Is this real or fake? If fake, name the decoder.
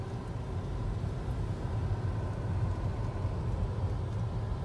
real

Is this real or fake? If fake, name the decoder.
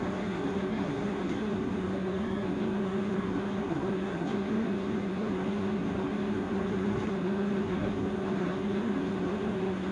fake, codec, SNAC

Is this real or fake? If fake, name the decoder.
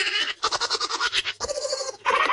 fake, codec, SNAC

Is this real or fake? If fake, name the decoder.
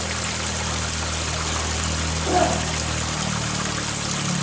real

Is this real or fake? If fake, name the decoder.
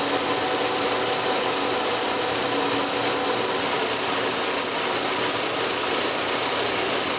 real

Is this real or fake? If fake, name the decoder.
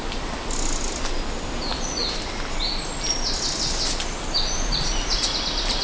real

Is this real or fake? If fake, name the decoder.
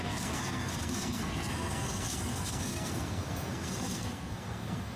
fake, codec, SNAC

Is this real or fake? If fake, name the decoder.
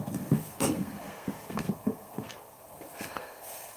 fake, codec, SNAC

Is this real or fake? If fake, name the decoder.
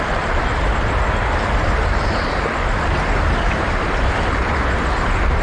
real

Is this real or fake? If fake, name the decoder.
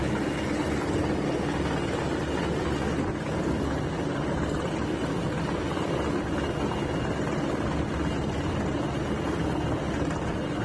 real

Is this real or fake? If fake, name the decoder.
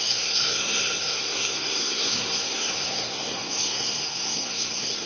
fake, codec, SNAC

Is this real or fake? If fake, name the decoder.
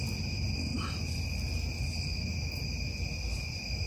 real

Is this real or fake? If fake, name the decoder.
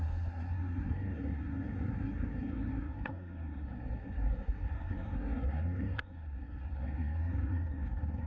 fake, codec, SNAC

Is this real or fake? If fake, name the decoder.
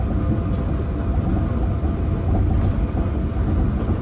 real